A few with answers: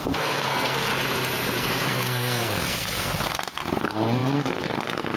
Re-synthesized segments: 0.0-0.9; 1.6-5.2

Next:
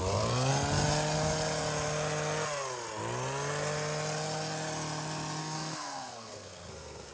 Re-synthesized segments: 5.4-7.1

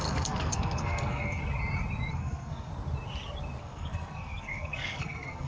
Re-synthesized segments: 0.0-1.4; 2.1-2.7; 3.6-5.5

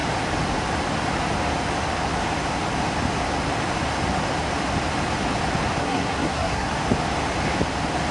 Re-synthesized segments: 5.8-6.7

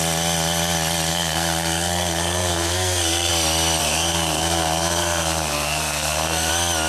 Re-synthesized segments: 1.1-3.3; 3.8-6.5

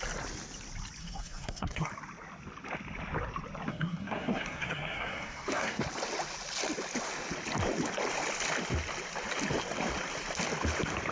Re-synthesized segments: 1.0-1.9; 3.7-5.8

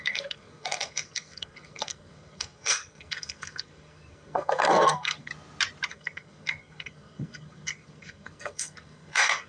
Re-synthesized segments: 0.0-5.3; 5.9-9.5

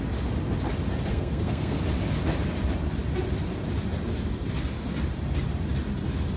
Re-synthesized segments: 1.1-1.8